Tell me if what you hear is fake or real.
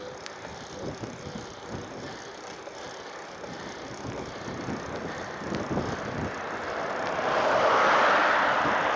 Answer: real